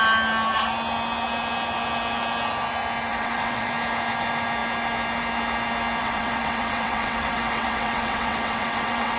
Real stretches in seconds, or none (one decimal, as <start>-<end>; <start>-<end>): 0.0-3.1; 3.7-6.0